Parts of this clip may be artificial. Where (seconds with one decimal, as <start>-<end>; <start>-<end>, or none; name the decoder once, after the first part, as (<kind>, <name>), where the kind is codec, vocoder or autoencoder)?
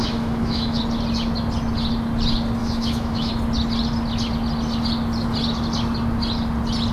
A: 0.0-0.8 (autoencoder, DAC-VAE); 2.6-3.3